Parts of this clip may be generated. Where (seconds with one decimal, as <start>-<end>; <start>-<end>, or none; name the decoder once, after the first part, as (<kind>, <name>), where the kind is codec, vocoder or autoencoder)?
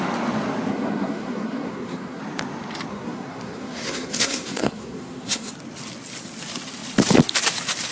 0.7-2.2 (codec, SNAC); 2.9-5.5